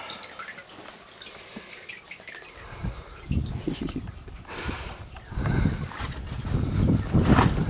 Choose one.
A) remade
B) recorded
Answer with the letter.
B